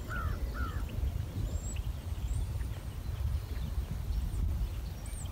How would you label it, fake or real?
real